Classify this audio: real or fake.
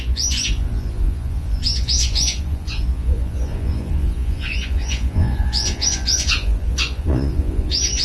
fake